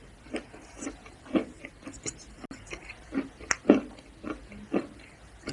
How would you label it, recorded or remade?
recorded